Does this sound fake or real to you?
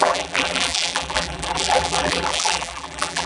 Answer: fake